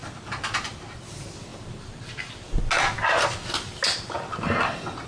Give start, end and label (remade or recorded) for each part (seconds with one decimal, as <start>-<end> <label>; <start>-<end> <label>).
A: 0.0-5.1 recorded